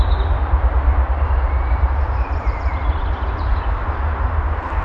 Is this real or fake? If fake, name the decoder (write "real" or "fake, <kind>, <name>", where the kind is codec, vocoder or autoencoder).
fake, vocoder, BigVGAN v2